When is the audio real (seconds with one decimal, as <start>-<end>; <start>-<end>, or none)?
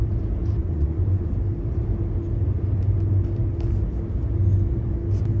0.0-0.6; 1.3-5.4